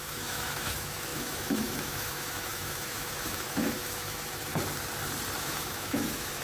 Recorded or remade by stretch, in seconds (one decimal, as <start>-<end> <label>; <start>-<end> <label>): 0.0-4.5 remade; 4.5-5.4 recorded; 5.4-6.4 remade